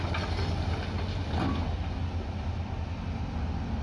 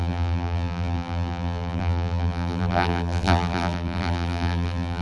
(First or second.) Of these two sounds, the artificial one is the second